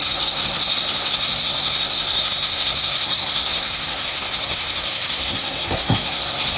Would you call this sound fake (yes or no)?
yes